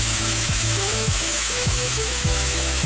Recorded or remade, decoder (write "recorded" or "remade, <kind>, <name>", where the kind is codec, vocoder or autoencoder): remade, autoencoder, DAC-VAE